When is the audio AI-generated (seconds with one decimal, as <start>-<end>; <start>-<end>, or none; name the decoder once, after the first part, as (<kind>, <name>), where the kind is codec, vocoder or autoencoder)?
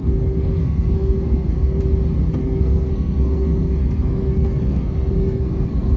0.0-1.8 (codec, SNAC); 2.4-6.0